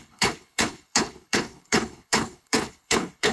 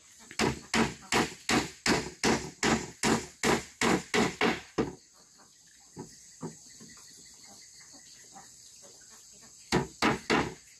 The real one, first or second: second